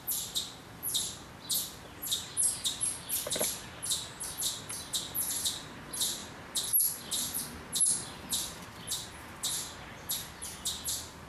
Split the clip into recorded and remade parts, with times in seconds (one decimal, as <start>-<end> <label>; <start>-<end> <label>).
0.0-11.3 recorded

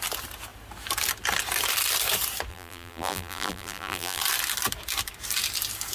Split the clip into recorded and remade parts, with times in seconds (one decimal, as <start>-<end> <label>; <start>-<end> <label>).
0.0-2.5 recorded; 2.5-4.2 remade; 4.2-5.9 recorded